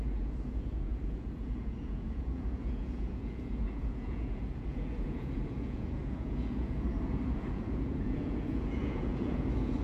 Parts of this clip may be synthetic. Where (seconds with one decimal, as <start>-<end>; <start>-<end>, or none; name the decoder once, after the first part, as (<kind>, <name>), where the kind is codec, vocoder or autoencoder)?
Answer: 0.0-9.8 (vocoder, Vocos)